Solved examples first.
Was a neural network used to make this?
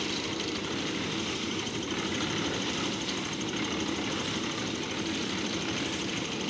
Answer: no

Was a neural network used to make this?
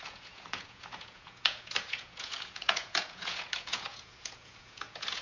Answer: yes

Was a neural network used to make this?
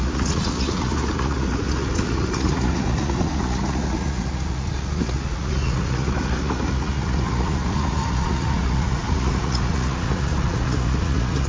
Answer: yes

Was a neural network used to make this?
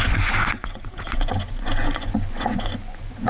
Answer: yes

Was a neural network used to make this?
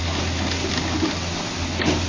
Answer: no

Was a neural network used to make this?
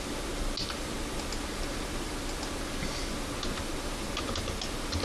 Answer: no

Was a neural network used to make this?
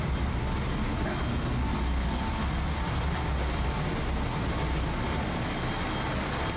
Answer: no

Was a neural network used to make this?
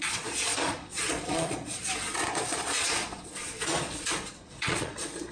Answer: yes